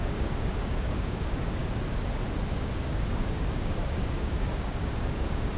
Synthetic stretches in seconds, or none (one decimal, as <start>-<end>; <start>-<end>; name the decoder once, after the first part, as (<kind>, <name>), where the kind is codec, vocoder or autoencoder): 0.0-1.6 (codec, DAC); 2.5-5.6